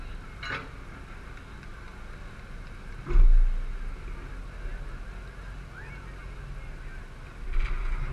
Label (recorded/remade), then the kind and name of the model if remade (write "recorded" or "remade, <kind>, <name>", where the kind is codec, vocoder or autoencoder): recorded